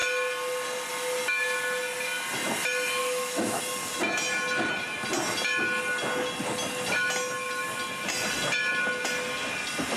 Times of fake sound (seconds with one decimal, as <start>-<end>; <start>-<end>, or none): 3.0-3.6